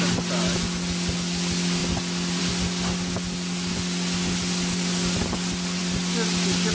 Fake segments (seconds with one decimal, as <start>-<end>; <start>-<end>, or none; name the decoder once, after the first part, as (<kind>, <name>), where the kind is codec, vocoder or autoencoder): none